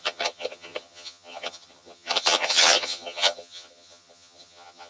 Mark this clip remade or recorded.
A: remade